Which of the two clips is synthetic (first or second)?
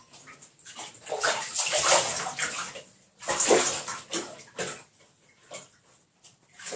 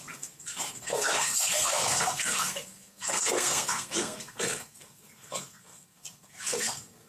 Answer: second